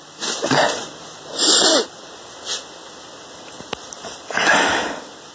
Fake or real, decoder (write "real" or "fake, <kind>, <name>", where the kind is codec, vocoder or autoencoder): real